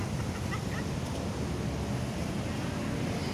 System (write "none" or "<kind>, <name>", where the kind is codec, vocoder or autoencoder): none